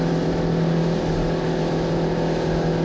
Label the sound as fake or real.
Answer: real